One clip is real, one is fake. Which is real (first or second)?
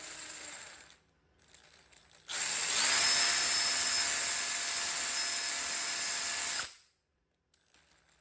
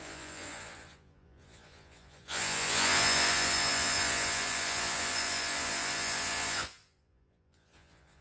first